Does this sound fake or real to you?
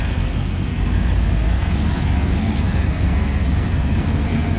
fake